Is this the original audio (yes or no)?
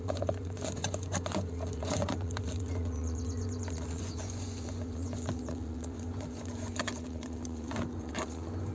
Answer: no